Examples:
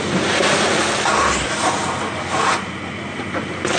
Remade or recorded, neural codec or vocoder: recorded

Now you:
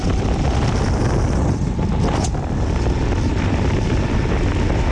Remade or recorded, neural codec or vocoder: recorded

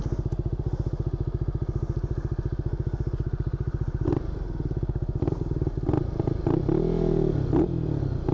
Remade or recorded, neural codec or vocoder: recorded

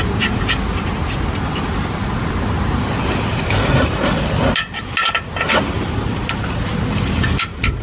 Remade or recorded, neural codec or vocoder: recorded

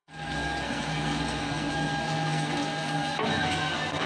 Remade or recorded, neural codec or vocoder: remade, codec, SNAC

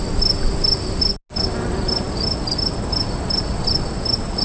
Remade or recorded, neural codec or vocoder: recorded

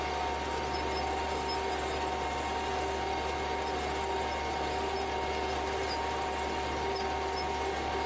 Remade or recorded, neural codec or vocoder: recorded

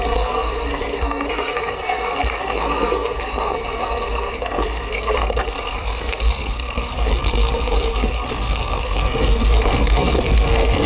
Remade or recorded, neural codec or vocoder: remade, codec, SNAC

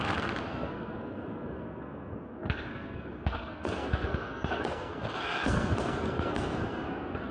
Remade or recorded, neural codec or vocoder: remade, codec, SNAC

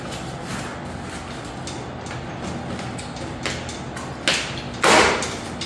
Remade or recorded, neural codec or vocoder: recorded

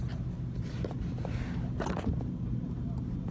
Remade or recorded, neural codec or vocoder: recorded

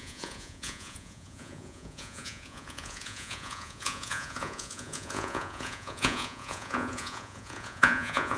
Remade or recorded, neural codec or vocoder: remade, vocoder, Vocos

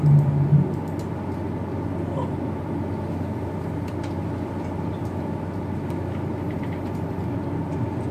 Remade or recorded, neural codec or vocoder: recorded